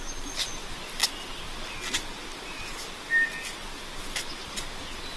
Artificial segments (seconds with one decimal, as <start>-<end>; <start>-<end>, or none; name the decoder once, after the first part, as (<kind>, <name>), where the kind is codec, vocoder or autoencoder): none